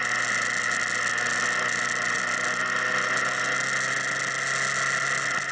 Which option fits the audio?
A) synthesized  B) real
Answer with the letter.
B